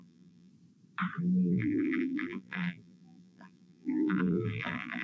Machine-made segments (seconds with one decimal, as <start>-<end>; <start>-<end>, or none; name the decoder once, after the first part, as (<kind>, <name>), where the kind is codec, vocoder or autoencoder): 0.0-0.5 (vocoder, BigVGAN v2); 1.2-5.0